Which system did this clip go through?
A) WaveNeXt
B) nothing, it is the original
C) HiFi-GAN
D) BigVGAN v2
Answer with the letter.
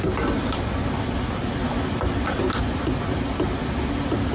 B